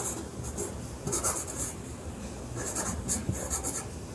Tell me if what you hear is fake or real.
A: real